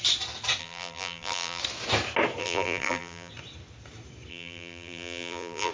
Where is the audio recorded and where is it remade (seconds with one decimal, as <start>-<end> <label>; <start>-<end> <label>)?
0.0-0.6 recorded; 0.6-1.6 remade; 1.6-2.4 recorded; 2.4-3.3 remade; 3.3-4.3 recorded; 4.3-5.7 remade

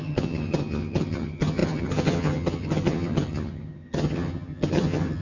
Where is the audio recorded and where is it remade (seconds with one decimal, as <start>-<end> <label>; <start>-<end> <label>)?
0.0-5.2 remade

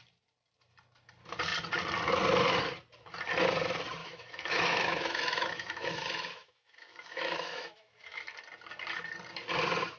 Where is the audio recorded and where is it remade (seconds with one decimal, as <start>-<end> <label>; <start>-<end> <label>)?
0.0-4.0 recorded; 4.0-8.2 remade; 8.2-10.0 recorded

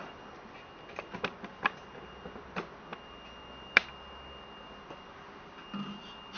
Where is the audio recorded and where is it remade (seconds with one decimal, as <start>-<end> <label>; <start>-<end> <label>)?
0.0-6.4 recorded